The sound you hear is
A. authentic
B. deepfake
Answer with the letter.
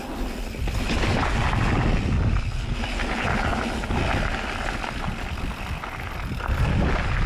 A